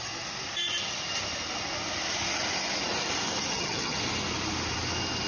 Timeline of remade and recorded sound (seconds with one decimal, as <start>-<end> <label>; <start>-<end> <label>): 0.0-3.5 recorded; 3.5-4.0 remade; 4.0-5.3 recorded